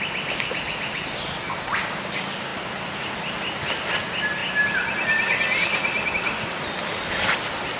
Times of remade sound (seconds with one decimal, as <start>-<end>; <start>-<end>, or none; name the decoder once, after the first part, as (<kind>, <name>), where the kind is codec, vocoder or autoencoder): none